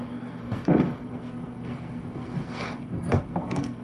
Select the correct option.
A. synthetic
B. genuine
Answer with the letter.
A